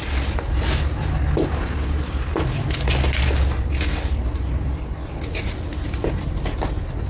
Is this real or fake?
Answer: real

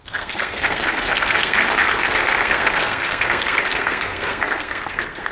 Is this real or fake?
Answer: fake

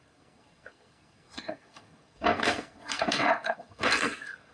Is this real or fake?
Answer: fake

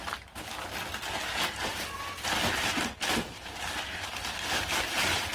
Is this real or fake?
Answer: real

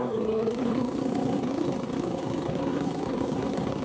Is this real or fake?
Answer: fake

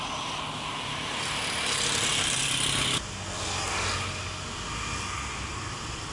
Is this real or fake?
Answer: real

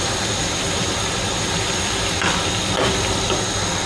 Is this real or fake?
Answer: real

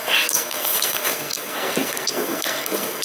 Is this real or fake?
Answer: fake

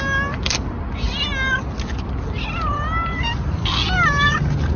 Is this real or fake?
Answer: real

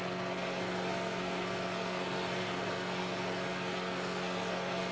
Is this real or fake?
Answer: fake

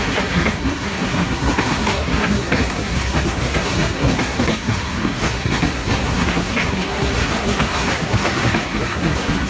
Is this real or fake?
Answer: fake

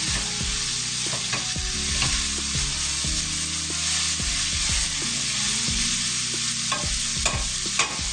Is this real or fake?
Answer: real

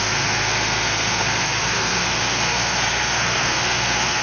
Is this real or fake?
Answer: fake